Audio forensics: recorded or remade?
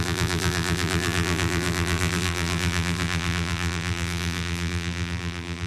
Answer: remade